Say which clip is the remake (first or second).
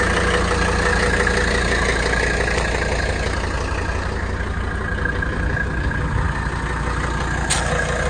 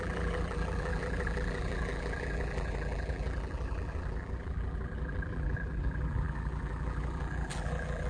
second